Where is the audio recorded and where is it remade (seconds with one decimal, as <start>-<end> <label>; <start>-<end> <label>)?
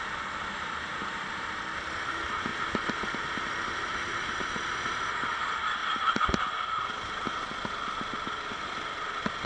0.0-9.5 recorded